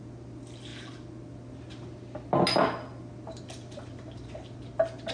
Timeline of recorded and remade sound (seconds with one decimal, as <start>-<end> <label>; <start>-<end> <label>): 0.0-5.1 recorded